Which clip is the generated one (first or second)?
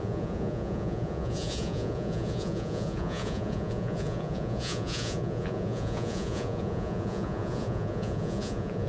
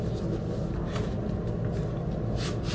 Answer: first